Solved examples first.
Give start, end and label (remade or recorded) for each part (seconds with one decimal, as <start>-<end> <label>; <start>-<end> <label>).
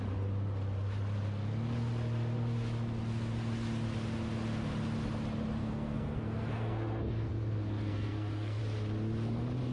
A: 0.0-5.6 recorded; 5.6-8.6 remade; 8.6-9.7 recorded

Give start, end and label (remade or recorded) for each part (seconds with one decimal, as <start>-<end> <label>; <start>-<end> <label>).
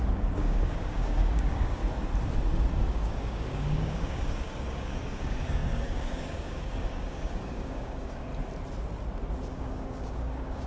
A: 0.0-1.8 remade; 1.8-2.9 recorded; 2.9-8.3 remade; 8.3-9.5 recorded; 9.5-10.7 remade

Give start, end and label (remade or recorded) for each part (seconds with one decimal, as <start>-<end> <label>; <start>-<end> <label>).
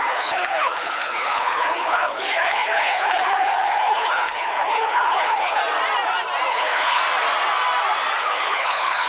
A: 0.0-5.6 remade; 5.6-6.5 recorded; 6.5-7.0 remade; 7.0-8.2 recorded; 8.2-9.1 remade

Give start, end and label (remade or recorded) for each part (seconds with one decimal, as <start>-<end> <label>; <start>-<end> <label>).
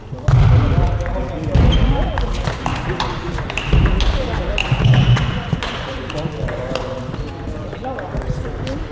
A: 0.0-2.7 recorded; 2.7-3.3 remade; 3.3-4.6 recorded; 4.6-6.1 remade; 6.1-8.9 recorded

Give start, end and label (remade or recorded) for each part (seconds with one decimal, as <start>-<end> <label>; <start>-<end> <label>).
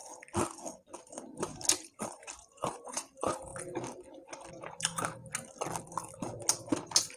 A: 0.0-1.0 recorded; 1.0-3.5 remade; 3.5-4.5 recorded; 4.5-5.2 remade; 5.2-6.7 recorded; 6.7-7.2 remade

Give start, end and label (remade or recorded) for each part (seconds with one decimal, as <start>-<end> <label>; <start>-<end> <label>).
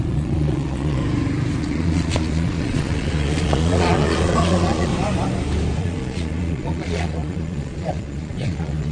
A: 0.0-1.0 remade; 1.0-1.6 recorded; 1.6-4.9 remade; 4.9-5.8 recorded; 5.8-8.9 remade